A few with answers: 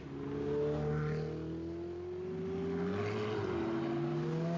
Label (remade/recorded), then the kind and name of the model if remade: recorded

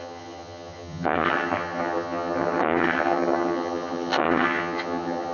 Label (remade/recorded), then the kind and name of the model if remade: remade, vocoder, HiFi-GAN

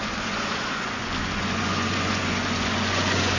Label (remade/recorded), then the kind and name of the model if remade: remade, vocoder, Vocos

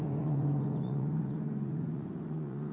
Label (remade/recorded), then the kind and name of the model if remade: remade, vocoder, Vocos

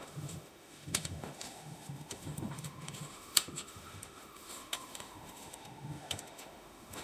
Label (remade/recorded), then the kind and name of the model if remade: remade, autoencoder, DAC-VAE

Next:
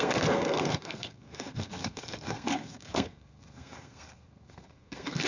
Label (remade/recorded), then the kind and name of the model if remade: remade, codec, SNAC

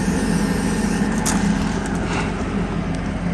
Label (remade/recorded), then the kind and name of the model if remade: recorded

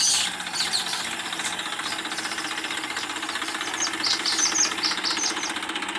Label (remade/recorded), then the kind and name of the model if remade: recorded